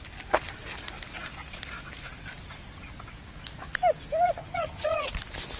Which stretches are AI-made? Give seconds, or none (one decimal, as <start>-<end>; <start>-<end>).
4.4-5.1